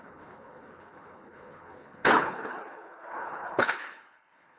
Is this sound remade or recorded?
remade